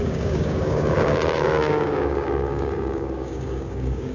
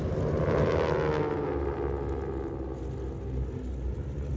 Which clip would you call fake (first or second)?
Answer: first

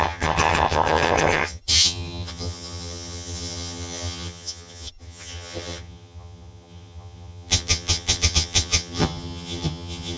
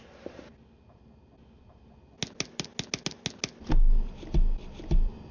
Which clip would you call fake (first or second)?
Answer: first